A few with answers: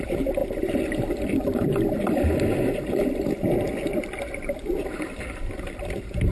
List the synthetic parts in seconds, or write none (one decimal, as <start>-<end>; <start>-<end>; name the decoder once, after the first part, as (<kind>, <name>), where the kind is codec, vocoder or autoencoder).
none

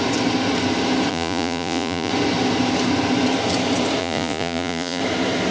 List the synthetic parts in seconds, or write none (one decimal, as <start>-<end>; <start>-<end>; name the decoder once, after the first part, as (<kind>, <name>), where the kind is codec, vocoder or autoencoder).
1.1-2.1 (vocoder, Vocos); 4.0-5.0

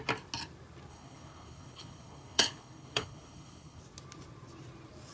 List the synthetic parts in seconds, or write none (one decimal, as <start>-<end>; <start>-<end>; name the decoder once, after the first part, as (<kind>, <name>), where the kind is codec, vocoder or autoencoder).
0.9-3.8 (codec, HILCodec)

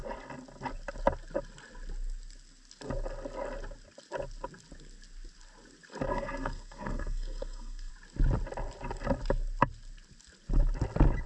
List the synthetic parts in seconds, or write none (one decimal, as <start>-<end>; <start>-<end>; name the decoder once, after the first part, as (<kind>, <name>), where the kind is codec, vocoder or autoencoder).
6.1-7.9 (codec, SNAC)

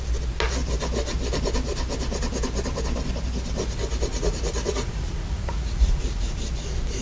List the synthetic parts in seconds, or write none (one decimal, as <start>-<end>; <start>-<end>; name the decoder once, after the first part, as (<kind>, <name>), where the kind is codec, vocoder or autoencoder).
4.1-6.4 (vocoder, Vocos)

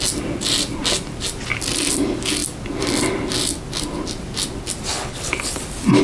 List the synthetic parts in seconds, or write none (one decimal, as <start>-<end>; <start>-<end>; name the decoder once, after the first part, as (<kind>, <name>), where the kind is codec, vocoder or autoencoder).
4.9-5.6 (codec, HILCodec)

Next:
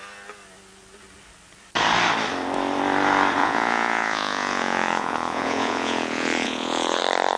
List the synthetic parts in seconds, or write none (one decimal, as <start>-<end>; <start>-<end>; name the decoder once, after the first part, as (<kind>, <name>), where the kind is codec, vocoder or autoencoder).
3.4-7.0 (vocoder, Vocos)

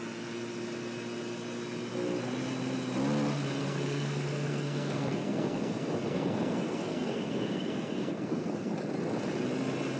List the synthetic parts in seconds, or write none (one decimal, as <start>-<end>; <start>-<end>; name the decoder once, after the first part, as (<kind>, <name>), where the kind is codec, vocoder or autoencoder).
3.6-8.7 (codec, SNAC)